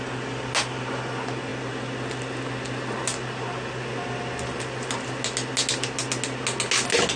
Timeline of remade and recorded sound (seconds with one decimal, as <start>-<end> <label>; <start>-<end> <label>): 0.0-7.2 recorded